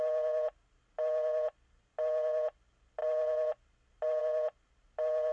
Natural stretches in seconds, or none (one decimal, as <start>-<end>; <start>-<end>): 0.0-5.3